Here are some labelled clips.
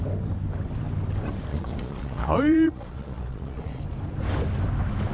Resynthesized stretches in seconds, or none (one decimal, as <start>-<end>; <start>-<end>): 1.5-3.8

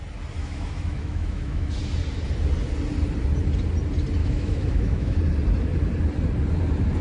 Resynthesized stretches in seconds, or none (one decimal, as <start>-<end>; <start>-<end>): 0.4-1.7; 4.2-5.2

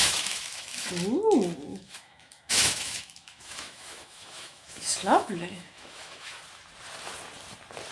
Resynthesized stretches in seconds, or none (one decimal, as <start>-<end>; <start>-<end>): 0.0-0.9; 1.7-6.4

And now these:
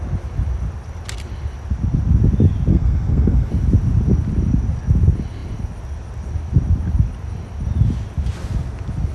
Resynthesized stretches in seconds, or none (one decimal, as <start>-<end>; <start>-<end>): 2.7-3.5

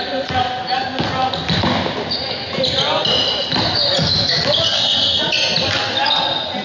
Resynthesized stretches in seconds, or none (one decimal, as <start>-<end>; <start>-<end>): 4.7-5.2

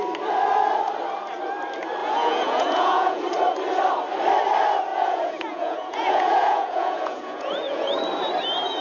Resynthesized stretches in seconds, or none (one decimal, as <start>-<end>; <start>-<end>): 2.0-3.2; 4.9-8.0

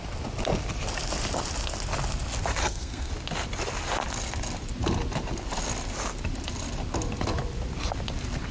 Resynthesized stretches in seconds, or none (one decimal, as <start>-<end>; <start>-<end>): 2.6-3.1

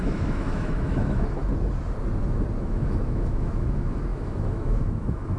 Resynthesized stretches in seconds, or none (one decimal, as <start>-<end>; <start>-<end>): 0.0-1.4; 2.6-5.4